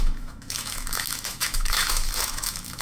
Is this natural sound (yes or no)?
no